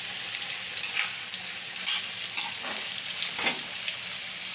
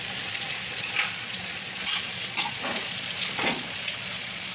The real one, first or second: first